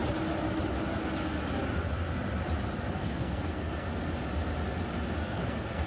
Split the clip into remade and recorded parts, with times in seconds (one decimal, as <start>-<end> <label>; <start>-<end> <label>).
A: 0.0-3.0 recorded; 3.0-3.9 remade; 3.9-5.2 recorded; 5.2-5.9 remade